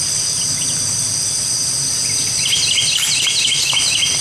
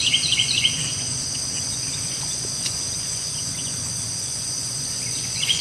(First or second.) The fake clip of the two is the second